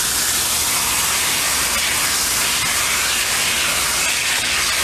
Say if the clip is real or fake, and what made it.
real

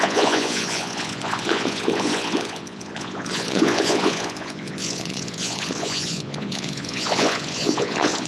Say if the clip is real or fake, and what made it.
fake, vocoder, Vocos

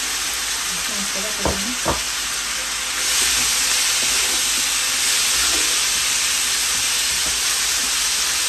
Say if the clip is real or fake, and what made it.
real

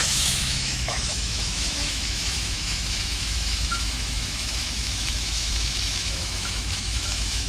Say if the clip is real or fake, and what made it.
fake, autoencoder, DAC-VAE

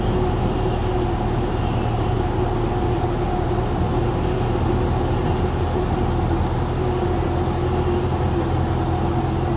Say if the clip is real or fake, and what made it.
real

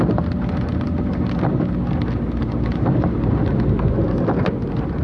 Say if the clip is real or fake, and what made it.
real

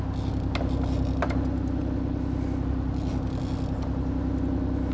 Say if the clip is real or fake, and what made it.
real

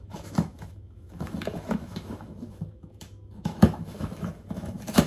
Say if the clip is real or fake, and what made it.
fake, autoencoder, DAC-VAE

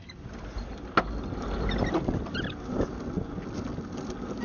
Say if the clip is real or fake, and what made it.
real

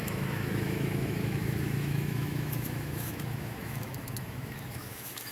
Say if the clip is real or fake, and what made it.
fake, autoencoder, DAC-VAE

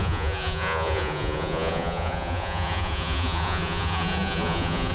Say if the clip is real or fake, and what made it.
fake, vocoder, Vocos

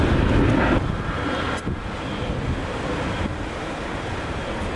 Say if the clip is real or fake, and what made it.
real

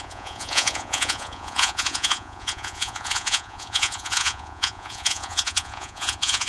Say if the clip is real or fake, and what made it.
fake, vocoder, Vocos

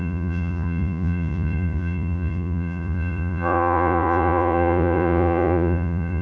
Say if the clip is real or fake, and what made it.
fake, vocoder, Vocos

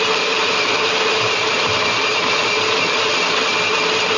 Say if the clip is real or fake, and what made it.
real